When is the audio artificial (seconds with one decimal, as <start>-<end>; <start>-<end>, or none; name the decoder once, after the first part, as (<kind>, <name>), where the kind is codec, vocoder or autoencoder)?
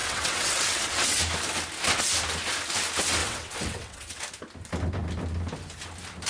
0.0-1.2 (vocoder, WaveNeXt); 3.2-4.2